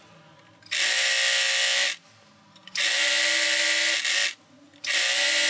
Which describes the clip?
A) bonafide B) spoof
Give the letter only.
A